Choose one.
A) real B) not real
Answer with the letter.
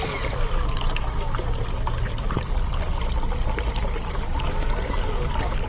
A